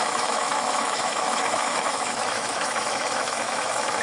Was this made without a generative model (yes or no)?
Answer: no